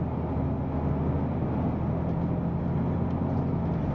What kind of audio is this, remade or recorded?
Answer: recorded